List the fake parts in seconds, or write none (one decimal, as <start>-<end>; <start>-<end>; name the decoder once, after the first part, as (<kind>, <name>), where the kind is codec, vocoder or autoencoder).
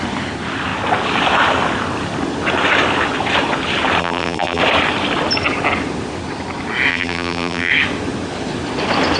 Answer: 4.0-4.6 (vocoder, BigVGAN v2); 6.9-7.7